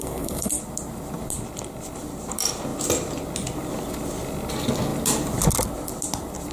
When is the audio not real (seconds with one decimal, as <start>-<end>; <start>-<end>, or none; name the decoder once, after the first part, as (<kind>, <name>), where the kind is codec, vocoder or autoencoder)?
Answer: 0.0-0.6 (codec, SNAC)